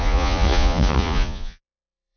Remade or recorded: remade